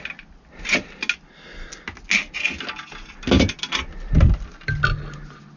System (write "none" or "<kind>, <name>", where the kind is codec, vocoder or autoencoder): none